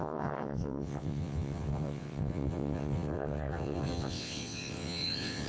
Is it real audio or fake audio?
fake